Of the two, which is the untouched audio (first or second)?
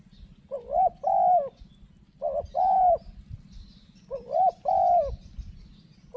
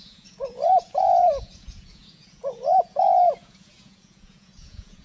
first